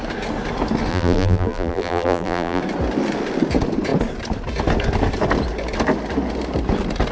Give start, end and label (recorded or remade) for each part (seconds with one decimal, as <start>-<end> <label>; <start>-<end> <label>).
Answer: 0.0-0.9 recorded; 0.9-2.6 remade; 2.6-7.1 recorded